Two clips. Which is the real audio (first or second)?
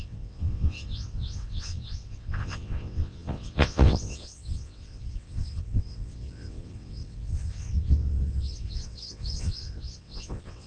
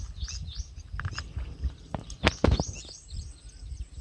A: second